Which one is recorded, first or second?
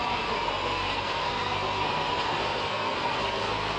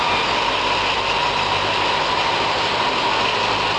second